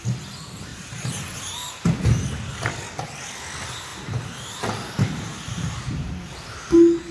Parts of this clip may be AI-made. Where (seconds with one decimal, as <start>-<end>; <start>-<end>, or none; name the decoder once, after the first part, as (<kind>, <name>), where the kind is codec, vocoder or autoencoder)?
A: 0.7-2.2 (vocoder, BigVGAN v2); 3.9-6.1